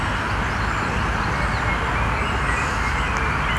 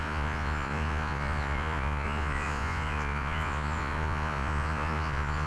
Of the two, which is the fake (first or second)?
second